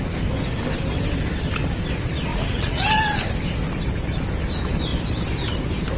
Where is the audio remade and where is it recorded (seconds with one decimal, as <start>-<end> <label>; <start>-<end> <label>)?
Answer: 0.0-2.3 recorded; 2.3-2.8 remade; 2.8-6.0 recorded